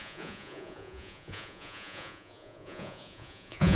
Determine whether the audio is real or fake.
fake